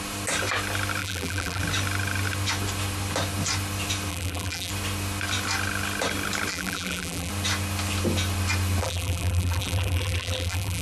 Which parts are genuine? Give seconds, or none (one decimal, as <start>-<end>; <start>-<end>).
0.0-1.0; 1.6-4.1; 4.7-6.5; 7.3-8.8